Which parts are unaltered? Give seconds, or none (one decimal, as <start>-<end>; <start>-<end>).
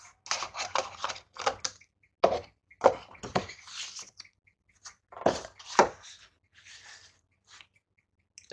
0.0-8.5